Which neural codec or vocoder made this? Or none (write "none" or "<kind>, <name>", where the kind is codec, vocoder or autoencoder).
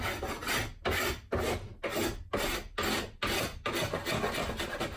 none